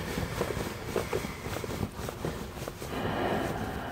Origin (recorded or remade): recorded